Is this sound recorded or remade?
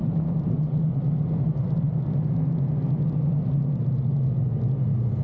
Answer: recorded